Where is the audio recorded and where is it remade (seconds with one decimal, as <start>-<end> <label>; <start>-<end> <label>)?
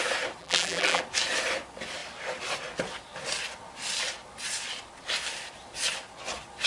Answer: 0.0-0.4 recorded; 0.4-1.0 remade; 1.0-6.7 recorded